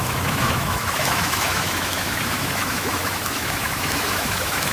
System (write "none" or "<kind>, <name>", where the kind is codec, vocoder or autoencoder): autoencoder, DAC-VAE